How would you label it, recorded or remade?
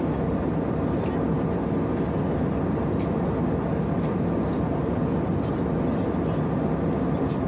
recorded